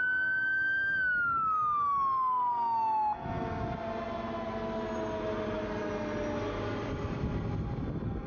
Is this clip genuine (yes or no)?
yes